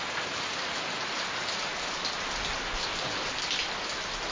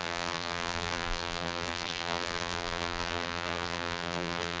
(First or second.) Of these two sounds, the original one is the first